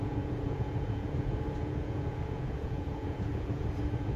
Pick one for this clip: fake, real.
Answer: fake